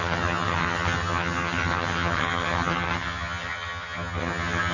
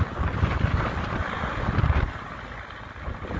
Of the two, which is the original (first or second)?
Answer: second